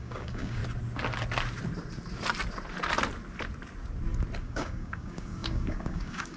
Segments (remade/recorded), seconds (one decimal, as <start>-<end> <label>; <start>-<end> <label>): 0.0-0.6 remade; 0.6-4.4 recorded; 4.4-6.4 remade